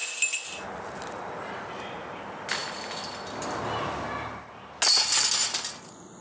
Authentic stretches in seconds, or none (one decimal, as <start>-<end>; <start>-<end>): 0.0-6.2